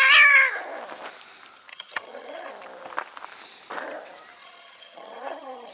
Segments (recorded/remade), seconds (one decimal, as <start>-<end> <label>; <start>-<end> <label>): 0.0-1.7 recorded; 1.7-2.5 remade; 2.5-4.4 recorded; 4.4-5.7 remade